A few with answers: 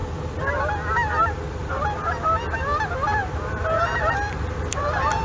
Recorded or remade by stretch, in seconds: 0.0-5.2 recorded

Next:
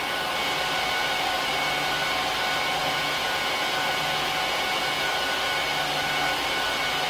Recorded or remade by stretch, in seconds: 0.0-2.8 recorded; 2.8-5.1 remade; 5.1-7.1 recorded

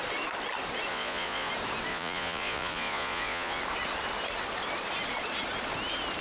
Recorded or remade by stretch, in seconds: 0.0-0.9 recorded; 0.9-1.5 remade; 1.5-1.9 recorded; 1.9-3.6 remade; 3.6-6.2 recorded